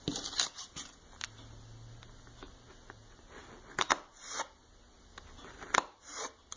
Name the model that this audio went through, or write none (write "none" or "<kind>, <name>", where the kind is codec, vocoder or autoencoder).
none